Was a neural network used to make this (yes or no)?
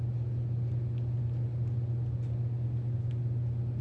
no